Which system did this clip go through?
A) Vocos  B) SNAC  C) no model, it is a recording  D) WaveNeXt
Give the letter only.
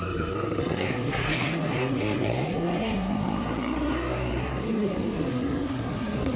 B